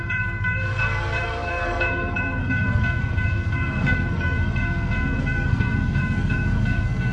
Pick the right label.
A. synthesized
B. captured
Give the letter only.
A